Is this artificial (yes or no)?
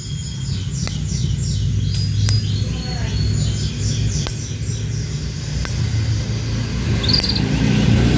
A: no